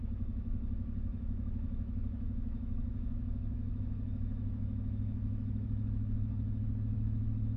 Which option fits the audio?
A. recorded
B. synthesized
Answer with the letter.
B